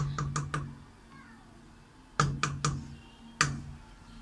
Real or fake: real